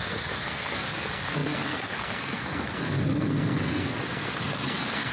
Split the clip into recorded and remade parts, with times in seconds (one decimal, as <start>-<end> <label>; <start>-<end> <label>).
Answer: 0.0-5.1 remade